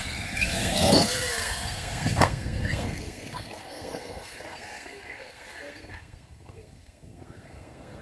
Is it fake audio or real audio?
fake